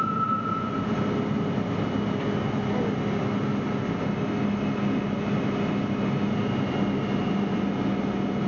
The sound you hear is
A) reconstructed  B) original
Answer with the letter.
B